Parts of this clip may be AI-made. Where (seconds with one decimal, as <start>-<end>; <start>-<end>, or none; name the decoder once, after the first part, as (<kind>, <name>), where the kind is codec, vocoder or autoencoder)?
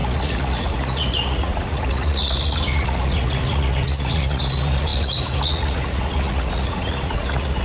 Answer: 0.0-7.6 (vocoder, Vocos)